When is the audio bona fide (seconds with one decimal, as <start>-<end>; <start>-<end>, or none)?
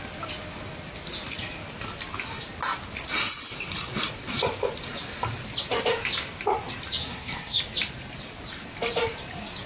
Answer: 0.0-7.0; 7.6-9.7